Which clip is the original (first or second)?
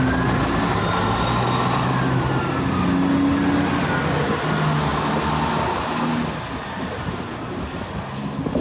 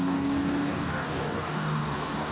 first